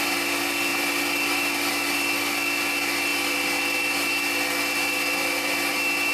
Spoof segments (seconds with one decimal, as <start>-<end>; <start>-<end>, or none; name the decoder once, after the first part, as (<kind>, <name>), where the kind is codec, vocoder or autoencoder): none